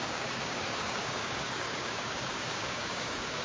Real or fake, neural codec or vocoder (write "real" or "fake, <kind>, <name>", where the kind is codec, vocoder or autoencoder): fake, codec, DAC